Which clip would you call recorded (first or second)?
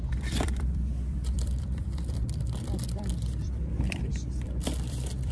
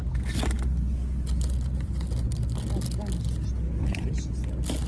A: second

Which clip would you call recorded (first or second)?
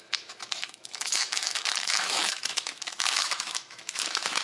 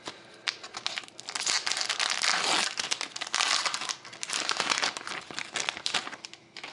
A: second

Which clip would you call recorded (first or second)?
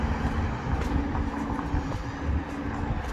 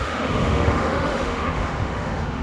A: first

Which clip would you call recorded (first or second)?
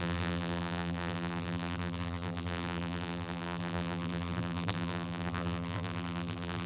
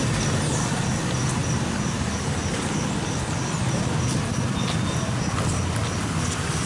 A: second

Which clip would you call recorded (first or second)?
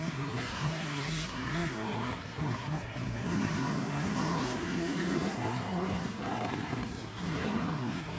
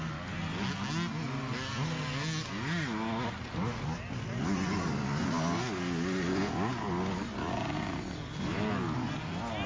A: second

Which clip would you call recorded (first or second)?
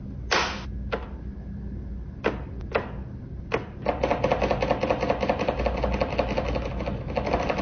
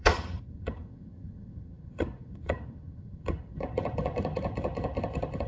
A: first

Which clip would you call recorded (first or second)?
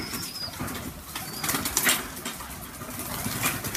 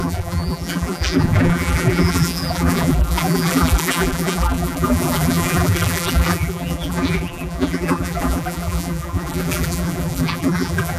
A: first